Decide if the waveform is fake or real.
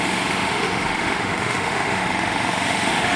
fake